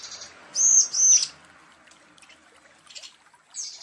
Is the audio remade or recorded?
recorded